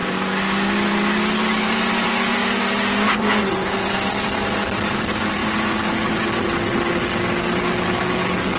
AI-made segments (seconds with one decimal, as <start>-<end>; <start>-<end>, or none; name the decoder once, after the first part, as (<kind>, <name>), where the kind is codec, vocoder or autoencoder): 0.0-5.4 (vocoder, BigVGAN v2)